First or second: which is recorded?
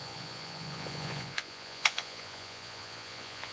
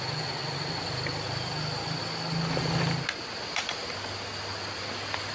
second